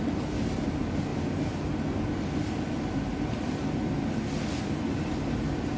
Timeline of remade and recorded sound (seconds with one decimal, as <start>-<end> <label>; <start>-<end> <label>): 0.0-5.8 recorded